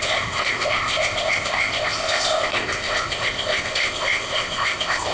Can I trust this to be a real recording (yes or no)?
no